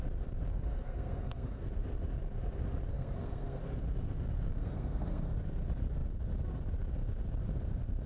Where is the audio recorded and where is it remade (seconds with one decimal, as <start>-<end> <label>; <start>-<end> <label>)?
0.0-0.5 recorded; 0.5-1.7 remade; 1.7-2.9 recorded; 2.9-3.6 remade; 3.6-4.5 recorded; 4.5-5.3 remade; 5.3-8.1 recorded